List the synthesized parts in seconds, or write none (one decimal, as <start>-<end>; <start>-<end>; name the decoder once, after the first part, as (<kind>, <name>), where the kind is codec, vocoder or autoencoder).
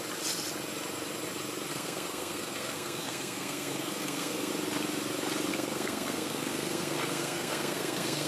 1.7-4.5 (codec, SNAC); 5.5-8.3